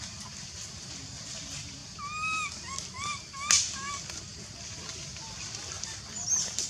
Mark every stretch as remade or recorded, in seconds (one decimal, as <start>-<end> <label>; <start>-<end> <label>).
0.0-6.7 recorded